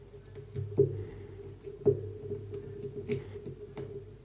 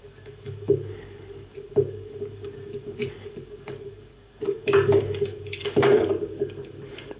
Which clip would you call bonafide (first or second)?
first